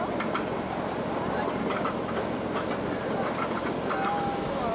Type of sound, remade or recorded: recorded